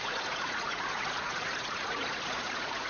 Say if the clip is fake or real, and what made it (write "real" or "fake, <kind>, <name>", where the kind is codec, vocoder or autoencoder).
fake, vocoder, Vocos